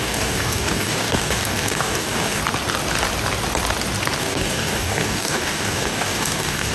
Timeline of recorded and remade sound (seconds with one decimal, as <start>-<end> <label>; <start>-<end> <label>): 0.0-2.4 remade; 2.4-4.2 recorded; 4.2-6.7 remade